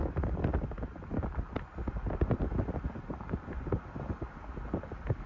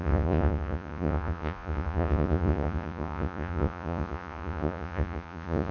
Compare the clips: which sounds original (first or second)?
first